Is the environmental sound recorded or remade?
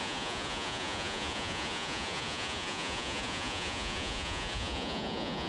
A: remade